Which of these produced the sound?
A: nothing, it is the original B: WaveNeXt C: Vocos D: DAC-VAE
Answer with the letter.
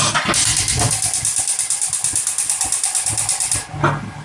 A